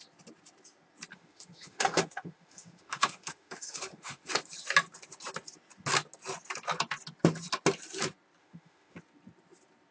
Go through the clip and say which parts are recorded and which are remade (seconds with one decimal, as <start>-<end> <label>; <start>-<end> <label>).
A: 0.0-1.1 recorded; 1.1-4.3 remade; 4.3-8.4 recorded; 8.4-9.0 remade; 9.0-9.9 recorded